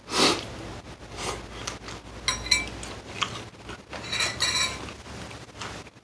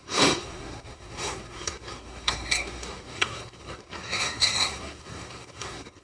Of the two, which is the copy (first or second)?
second